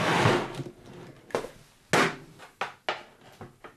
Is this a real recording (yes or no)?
yes